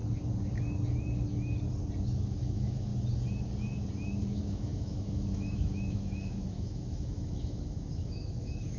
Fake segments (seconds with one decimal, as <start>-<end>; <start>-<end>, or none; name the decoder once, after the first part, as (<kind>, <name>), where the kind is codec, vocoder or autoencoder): 2.2-2.9 (autoencoder, DAC-VAE); 4.2-8.8